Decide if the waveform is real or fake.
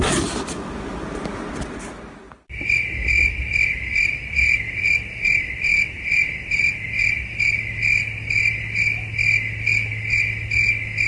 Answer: real